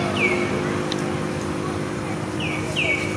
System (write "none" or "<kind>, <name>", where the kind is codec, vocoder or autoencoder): none